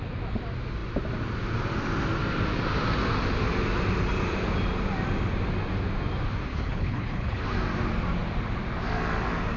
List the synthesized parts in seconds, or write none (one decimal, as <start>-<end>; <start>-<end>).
6.5-7.4